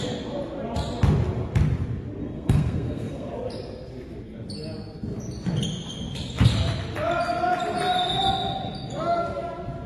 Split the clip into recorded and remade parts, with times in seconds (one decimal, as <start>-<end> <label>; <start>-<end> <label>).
0.0-2.2 recorded; 2.2-3.3 remade; 3.3-9.9 recorded